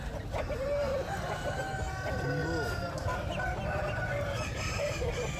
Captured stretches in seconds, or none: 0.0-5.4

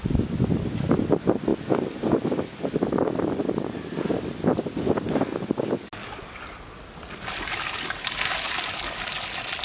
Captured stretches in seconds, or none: 0.0-9.6

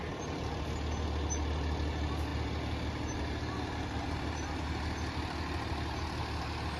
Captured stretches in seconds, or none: 0.0-6.8

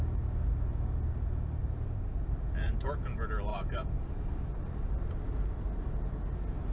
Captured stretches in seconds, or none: 0.0-1.6; 2.9-3.5; 4.5-6.7

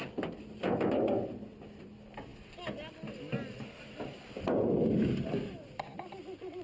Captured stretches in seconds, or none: 0.0-6.6

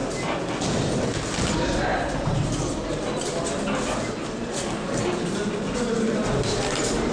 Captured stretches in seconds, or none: 0.0-7.1

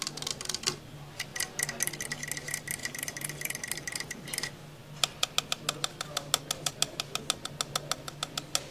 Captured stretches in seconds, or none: 0.0-2.8; 4.3-8.7